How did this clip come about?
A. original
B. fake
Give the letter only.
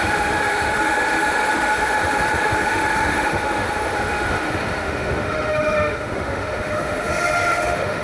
B